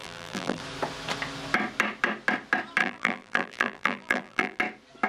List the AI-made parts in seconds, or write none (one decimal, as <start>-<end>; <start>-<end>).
0.0-0.6; 2.8-4.6